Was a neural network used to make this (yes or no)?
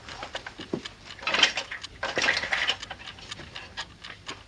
no